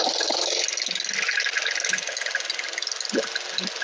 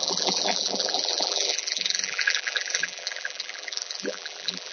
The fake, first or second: second